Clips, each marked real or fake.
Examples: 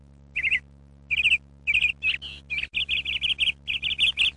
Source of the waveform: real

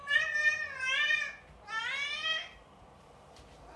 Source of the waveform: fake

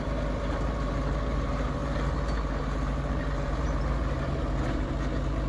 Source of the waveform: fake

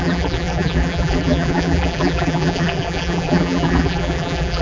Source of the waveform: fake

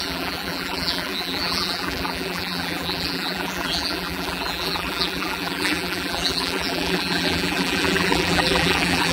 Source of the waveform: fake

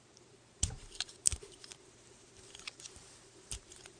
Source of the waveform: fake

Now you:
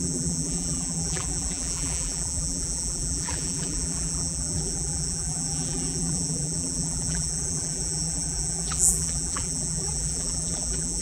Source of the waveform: fake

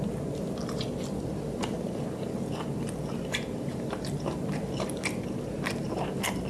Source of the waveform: fake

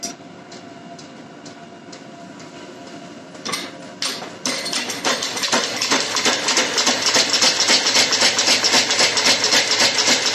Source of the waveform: real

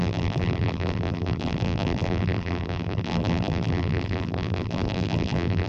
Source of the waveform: fake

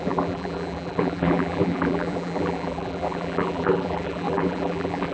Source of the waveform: fake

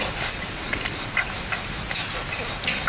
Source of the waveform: real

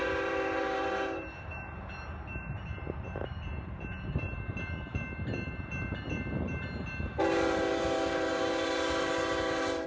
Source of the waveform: fake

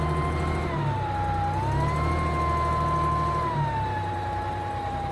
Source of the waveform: real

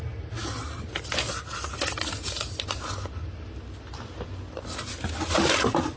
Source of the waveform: real